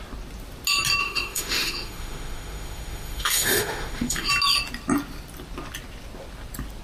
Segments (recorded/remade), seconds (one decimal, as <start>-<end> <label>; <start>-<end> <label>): 0.0-1.0 recorded; 1.0-4.3 remade; 4.3-6.8 recorded